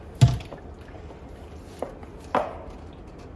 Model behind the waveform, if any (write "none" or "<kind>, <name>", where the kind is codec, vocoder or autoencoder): none